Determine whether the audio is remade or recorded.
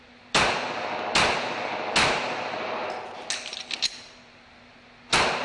recorded